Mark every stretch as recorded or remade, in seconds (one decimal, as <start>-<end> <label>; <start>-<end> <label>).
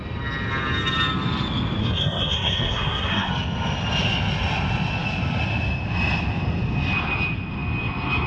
0.0-1.8 recorded; 1.8-3.3 remade; 3.3-8.3 recorded